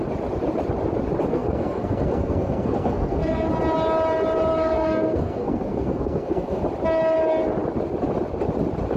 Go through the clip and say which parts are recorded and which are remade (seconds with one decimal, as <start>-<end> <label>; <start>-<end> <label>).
0.0-1.3 recorded; 1.3-3.5 remade; 3.5-4.5 recorded; 4.5-6.6 remade; 6.6-9.0 recorded